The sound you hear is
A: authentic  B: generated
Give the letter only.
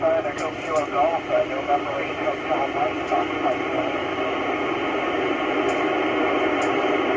A